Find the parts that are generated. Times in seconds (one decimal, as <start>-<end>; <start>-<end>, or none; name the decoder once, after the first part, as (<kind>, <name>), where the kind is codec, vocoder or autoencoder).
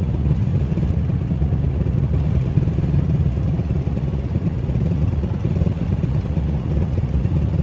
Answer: 0.0-7.6 (vocoder, Vocos)